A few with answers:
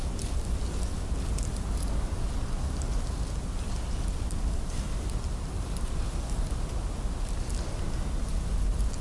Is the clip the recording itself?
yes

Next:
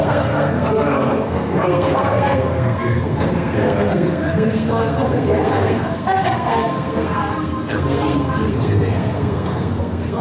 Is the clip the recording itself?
no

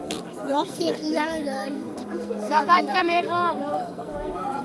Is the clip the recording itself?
no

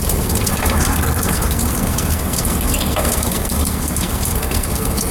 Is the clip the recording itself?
no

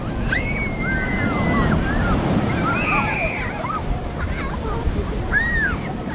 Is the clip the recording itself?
yes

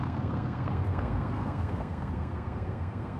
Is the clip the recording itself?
no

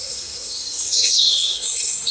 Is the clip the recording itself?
no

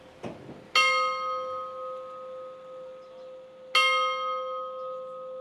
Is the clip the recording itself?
yes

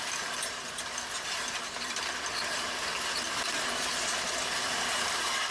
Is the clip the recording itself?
yes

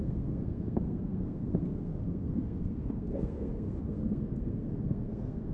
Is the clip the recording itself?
no